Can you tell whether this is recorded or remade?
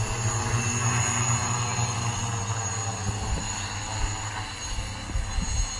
recorded